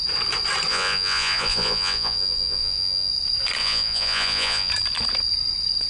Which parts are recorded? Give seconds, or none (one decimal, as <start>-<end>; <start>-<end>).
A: 0.0-0.7; 3.1-3.6; 4.7-5.9